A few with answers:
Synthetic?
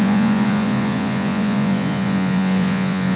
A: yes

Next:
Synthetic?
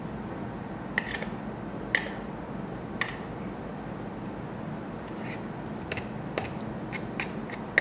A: no